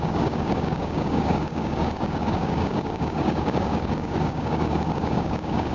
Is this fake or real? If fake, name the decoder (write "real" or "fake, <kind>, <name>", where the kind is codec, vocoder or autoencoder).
fake, codec, DAC